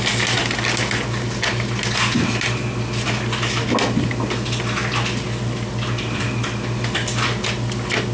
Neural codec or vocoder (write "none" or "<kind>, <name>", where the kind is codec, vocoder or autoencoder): none